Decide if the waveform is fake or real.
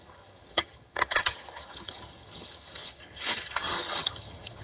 fake